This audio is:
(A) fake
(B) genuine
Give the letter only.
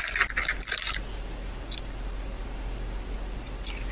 B